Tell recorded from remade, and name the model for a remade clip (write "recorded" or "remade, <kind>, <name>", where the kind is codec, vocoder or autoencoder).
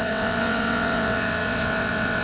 remade, vocoder, WaveNeXt